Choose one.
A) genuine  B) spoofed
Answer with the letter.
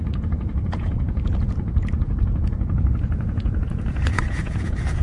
B